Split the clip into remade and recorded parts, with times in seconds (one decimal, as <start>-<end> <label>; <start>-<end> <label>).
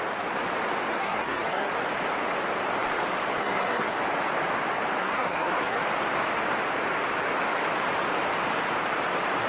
0.0-0.9 recorded; 0.9-1.7 remade; 1.7-3.4 recorded; 3.4-4.0 remade; 4.0-5.0 recorded; 5.0-5.8 remade; 5.8-9.5 recorded